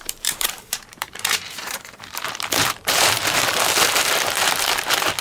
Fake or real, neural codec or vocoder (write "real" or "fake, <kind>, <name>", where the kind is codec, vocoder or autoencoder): fake, vocoder, BigVGAN v2